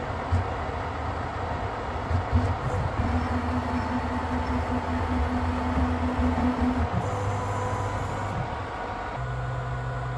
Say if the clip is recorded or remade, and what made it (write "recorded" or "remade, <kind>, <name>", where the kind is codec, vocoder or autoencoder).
recorded